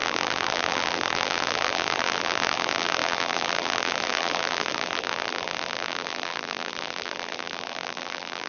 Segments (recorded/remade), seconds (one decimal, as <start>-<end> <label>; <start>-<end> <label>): 0.0-8.5 remade